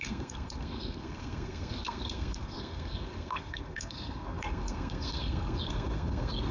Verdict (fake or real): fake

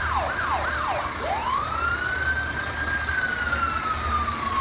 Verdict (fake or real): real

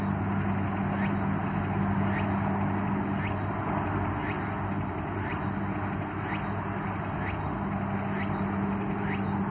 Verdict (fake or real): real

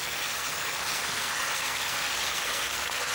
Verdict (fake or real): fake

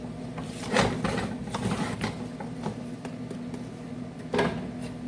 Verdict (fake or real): real